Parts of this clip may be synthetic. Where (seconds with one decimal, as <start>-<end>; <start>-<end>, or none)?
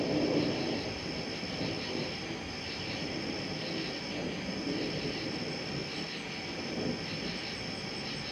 none